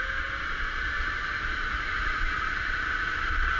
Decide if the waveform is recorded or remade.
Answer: recorded